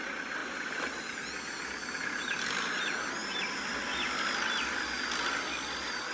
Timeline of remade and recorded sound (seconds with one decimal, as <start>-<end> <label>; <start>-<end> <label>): 0.0-0.4 recorded; 0.4-1.3 remade; 1.3-3.2 recorded; 3.2-3.8 remade; 3.8-6.1 recorded